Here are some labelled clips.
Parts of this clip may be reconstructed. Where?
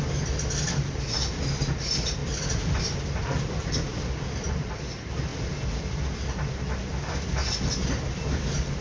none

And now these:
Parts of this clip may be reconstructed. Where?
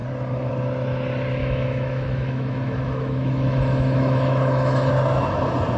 1.4-4.9 (autoencoder, DAC-VAE)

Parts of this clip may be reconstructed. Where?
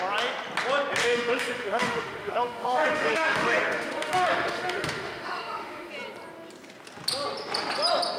1.0-5.9 (autoencoder, DAC-VAE)